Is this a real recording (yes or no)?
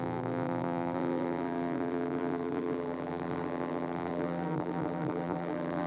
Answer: no